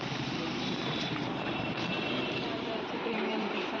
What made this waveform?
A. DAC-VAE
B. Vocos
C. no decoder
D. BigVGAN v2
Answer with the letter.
D